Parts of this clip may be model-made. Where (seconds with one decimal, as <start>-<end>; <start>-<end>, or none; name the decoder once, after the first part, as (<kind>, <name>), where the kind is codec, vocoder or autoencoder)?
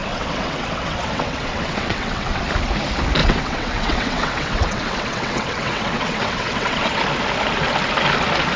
0.0-2.4 (vocoder, WaveNeXt); 3.2-7.0